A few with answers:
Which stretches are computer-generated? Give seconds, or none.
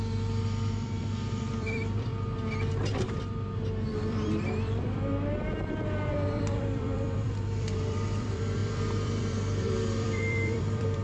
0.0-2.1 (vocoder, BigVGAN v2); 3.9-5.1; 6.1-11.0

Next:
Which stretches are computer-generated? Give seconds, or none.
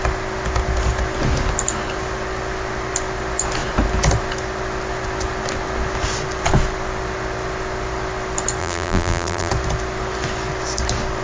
8.6-9.5 (vocoder, BigVGAN v2)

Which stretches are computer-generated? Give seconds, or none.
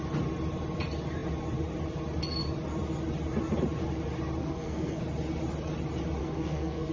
4.4-5.0 (codec, SNAC); 6.2-6.9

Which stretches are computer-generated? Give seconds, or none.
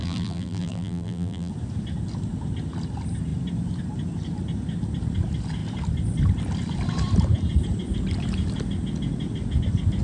0.0-1.5 (vocoder, BigVGAN v2)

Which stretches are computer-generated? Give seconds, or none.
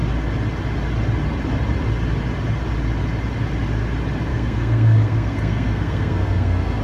4.3-6.8 (codec, SNAC)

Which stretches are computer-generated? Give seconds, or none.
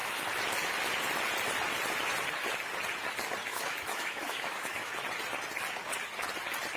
3.5-4.9 (autoencoder, DAC-VAE)